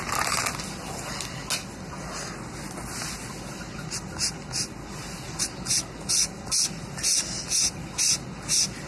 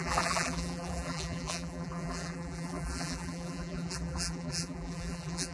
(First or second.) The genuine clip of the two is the first